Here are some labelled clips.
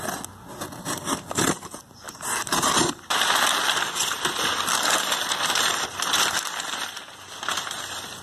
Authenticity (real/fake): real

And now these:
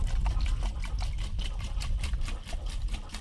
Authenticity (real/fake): real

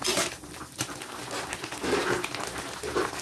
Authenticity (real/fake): real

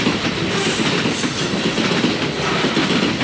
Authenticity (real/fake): real